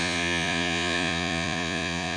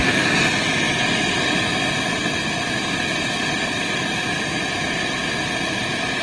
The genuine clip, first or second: second